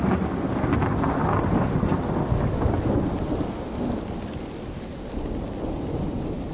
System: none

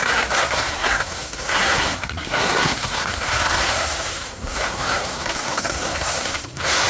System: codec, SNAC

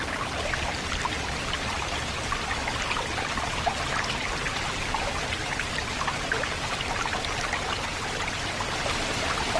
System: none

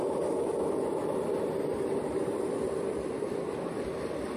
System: vocoder, BigVGAN v2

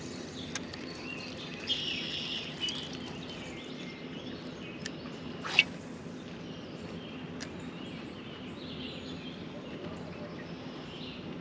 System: none